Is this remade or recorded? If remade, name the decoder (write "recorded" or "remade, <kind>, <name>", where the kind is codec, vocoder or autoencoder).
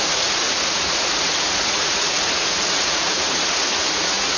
remade, vocoder, Vocos